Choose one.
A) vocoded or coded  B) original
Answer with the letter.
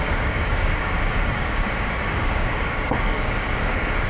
A